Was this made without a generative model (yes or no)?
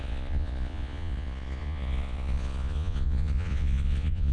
no